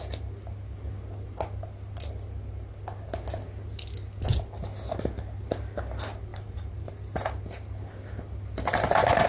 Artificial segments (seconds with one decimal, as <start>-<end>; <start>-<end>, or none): 6.3-6.9